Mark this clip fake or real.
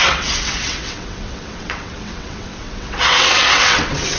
fake